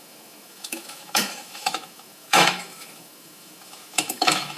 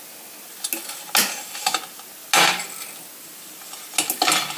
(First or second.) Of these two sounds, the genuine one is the second